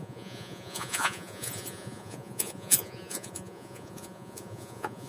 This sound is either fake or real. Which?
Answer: fake